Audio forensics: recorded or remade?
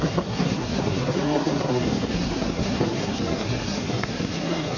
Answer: remade